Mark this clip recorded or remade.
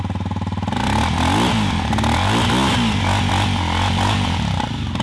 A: recorded